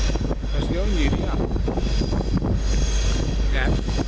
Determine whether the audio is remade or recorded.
recorded